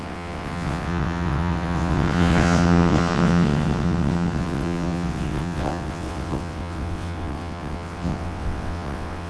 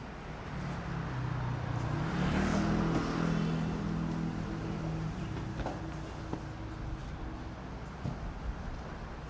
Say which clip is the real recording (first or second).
second